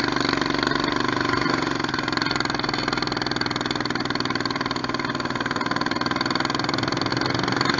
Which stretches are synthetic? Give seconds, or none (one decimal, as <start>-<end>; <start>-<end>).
none